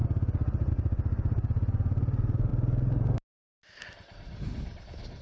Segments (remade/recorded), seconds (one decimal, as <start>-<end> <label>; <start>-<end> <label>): 0.0-5.2 recorded